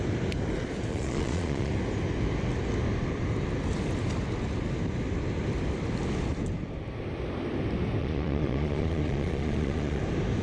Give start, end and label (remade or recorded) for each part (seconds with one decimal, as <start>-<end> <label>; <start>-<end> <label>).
0.0-0.9 recorded; 0.9-1.7 remade; 1.7-8.0 recorded; 8.0-10.0 remade; 10.0-10.4 recorded